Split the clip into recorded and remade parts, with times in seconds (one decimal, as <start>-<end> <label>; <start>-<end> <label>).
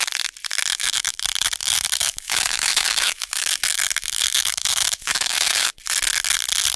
0.0-0.7 recorded; 0.7-1.2 remade; 1.2-1.6 recorded; 1.6-5.7 remade; 5.7-6.8 recorded